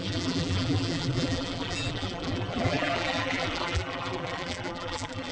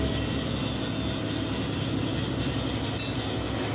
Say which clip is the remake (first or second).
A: first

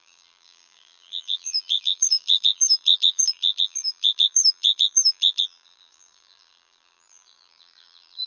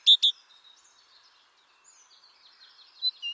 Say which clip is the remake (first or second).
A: first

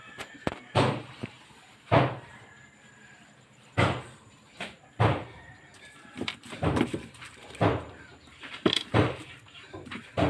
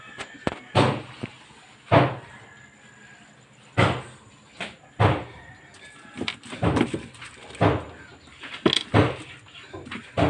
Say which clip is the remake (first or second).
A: first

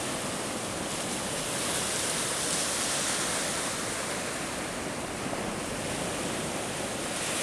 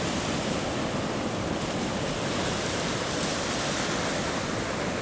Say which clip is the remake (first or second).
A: second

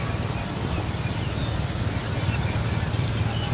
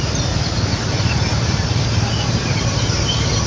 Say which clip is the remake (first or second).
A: second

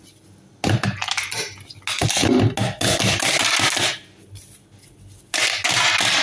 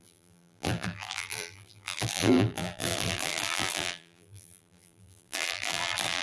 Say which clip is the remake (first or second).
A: second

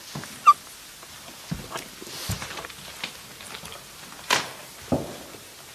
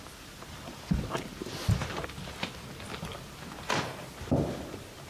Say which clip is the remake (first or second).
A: second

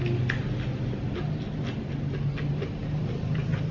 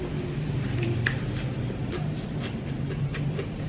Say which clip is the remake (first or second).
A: second